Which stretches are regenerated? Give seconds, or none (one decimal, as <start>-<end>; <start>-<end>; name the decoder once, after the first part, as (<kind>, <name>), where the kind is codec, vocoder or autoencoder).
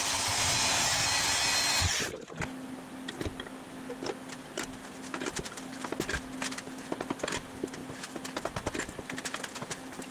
none